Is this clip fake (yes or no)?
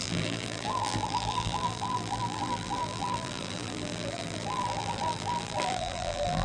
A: yes